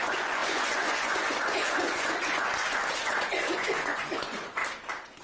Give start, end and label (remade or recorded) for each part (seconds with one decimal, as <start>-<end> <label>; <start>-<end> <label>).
0.0-4.6 remade; 4.6-5.2 recorded